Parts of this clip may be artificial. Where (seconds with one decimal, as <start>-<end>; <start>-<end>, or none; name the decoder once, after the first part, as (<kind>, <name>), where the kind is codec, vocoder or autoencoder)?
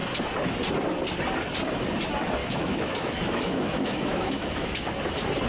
2.4-4.9 (autoencoder, DAC-VAE)